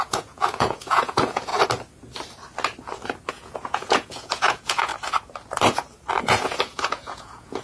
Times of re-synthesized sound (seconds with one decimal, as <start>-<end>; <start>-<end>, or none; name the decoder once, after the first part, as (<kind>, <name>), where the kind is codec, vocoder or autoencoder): 0.0-1.5 (vocoder, Vocos); 3.3-4.9; 6.2-7.6